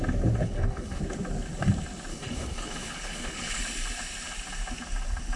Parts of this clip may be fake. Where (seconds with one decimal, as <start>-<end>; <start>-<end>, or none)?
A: 0.4-1.0; 2.1-3.6